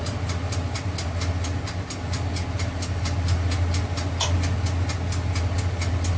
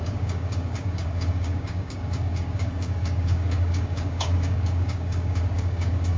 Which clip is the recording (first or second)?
first